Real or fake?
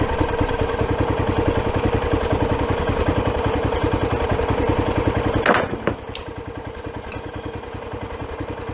real